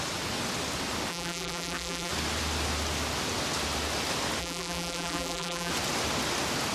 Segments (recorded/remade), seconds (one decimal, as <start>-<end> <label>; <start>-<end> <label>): 0.0-1.1 recorded; 1.1-2.1 remade; 2.1-4.4 recorded; 4.4-5.7 remade; 5.7-6.7 recorded